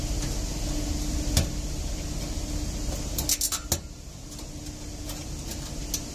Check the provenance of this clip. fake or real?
real